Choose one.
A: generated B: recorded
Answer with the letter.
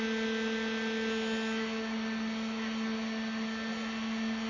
B